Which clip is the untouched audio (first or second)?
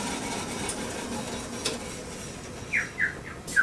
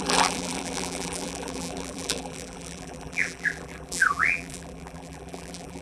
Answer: first